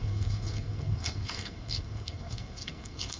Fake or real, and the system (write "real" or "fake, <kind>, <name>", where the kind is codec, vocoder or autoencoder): fake, codec, SNAC